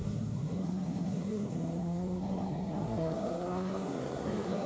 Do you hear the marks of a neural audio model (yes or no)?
yes